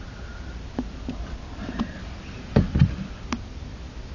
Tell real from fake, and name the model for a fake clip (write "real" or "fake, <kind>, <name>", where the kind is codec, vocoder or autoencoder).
real